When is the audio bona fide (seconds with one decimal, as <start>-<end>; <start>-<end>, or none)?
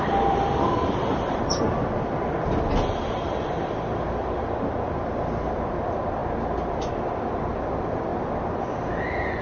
4.4-5.5; 6.2-6.9